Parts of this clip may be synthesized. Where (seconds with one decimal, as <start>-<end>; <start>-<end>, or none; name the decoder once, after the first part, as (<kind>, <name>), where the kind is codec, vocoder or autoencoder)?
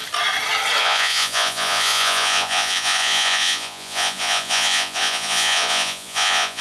0.8-6.6 (vocoder, Vocos)